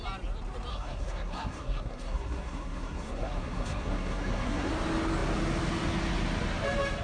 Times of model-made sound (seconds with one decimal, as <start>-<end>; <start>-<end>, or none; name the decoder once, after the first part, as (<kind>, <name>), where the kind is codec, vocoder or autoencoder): 0.7-4.7 (codec, SNAC)